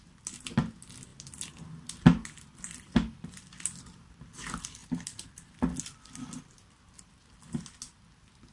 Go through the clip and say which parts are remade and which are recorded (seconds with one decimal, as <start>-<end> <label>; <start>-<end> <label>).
0.0-8.5 recorded